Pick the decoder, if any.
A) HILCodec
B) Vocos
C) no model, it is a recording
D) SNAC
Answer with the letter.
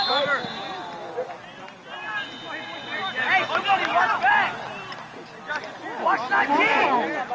C